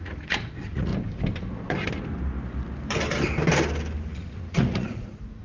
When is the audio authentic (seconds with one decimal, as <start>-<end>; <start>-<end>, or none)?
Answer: 0.9-4.1

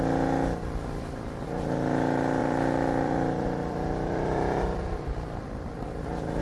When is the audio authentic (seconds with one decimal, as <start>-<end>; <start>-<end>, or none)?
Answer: 0.0-2.4